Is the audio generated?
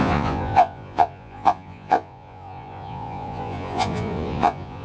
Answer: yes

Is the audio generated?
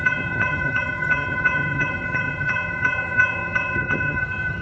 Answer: yes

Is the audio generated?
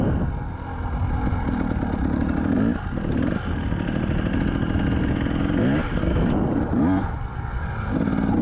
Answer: no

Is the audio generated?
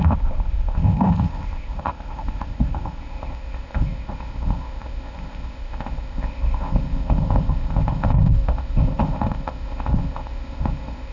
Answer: yes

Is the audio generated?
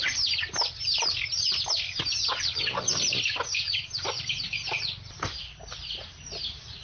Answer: no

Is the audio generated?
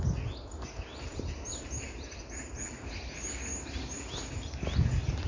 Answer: no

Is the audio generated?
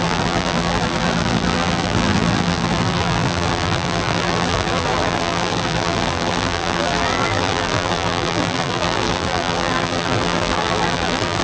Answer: yes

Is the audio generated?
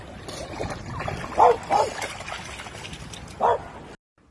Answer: no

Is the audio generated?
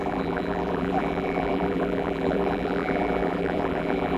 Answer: yes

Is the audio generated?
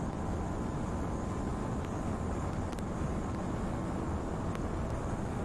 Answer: no